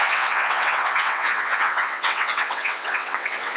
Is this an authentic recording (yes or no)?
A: no